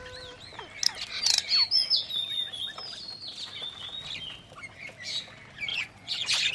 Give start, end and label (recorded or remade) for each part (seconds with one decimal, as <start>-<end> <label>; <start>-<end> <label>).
0.0-5.7 recorded; 5.7-6.5 remade